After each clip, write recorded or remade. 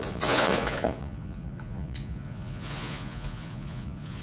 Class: remade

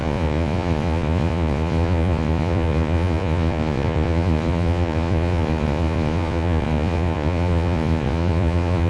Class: remade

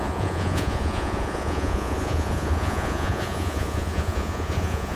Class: remade